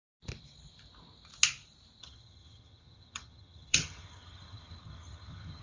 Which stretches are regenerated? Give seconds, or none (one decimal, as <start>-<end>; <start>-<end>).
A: 2.0-5.6